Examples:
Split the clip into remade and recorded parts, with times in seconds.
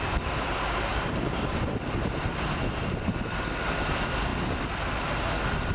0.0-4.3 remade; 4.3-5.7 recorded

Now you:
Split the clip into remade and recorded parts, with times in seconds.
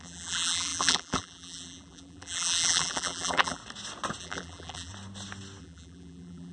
0.0-3.6 remade; 3.6-4.2 recorded; 4.2-4.9 remade; 4.9-5.6 recorded; 5.6-6.5 remade